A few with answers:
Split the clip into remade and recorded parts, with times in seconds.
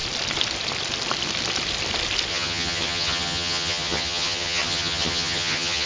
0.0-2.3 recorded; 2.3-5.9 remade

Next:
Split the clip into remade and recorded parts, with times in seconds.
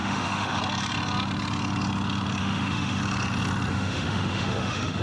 0.0-0.6 remade; 0.6-2.4 recorded; 2.4-3.0 remade; 3.0-3.7 recorded; 3.7-5.0 remade